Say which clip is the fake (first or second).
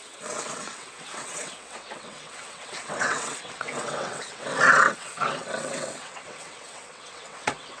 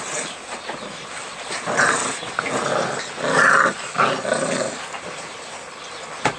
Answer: first